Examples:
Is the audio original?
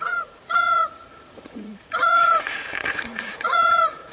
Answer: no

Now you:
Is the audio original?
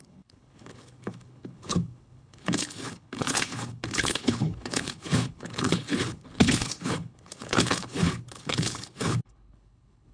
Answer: no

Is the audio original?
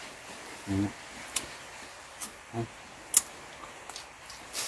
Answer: yes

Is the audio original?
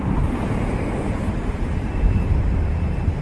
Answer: no